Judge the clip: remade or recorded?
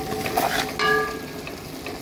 recorded